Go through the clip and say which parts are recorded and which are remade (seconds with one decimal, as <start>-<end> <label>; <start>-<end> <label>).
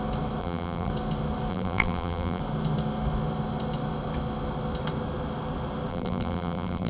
0.0-0.4 recorded; 0.4-0.9 remade; 0.9-1.5 recorded; 1.5-2.4 remade; 2.4-5.9 recorded; 5.9-6.9 remade